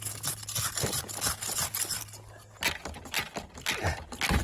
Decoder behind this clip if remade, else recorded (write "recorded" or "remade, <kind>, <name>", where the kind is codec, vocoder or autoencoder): recorded